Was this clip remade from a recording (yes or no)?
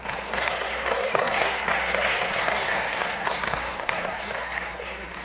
yes